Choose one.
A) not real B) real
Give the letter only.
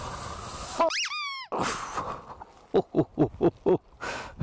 B